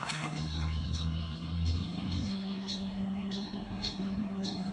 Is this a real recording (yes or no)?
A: no